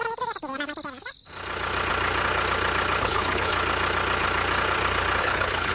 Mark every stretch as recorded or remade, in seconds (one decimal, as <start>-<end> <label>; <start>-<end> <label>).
0.0-3.0 recorded; 3.0-3.5 remade; 3.5-5.2 recorded; 5.2-5.7 remade